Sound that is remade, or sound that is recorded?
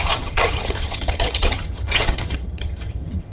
remade